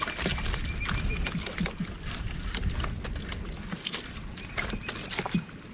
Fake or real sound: real